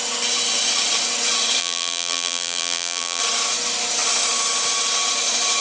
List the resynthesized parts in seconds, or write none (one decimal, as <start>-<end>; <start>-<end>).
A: 1.6-3.2